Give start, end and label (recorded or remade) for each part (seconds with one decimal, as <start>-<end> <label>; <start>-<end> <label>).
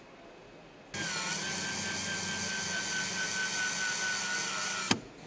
0.0-5.3 recorded